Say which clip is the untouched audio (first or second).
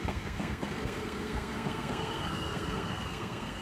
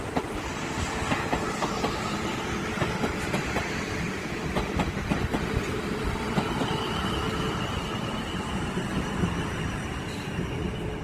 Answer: second